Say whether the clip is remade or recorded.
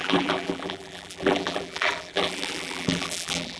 remade